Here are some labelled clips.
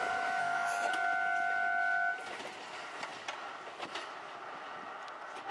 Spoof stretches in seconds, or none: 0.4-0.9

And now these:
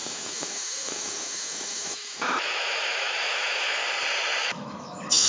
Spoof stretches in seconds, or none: 0.0-3.8; 4.4-5.3

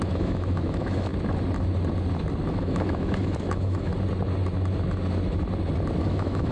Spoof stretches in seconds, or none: 0.0-1.1; 2.6-3.9; 6.0-6.5

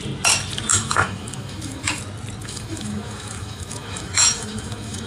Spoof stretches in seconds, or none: 0.7-2.0; 2.4-5.1

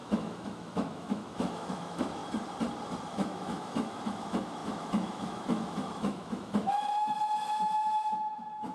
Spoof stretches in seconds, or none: 0.0-2.2; 3.1-8.7

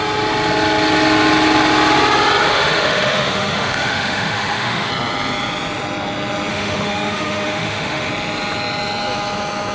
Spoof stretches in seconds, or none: 2.5-4.9; 6.5-8.1

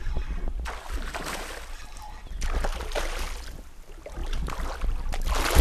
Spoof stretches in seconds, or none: none

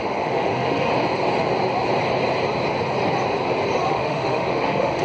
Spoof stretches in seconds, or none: 0.0-0.9; 3.9-5.0